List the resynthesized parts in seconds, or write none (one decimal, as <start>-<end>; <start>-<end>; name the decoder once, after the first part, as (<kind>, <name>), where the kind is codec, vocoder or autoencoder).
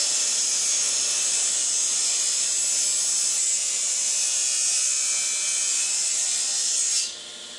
none